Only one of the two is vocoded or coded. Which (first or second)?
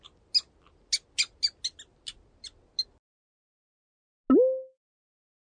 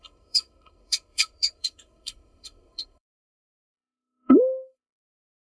second